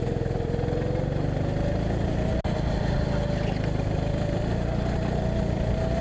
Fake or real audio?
real